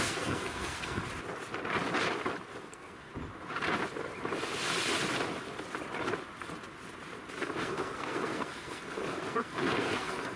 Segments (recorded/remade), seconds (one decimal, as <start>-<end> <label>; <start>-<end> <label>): 0.0-1.0 remade; 1.0-2.6 recorded; 2.6-3.1 remade; 3.1-7.6 recorded; 7.6-10.4 remade